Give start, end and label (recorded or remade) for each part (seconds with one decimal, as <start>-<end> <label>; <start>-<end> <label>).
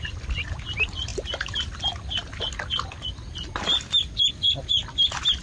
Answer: 0.0-5.4 recorded